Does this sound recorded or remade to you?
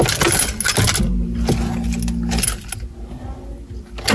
recorded